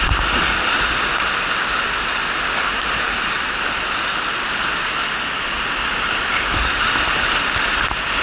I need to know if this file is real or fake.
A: real